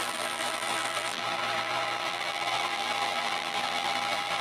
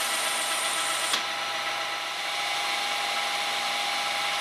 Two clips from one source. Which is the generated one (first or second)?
first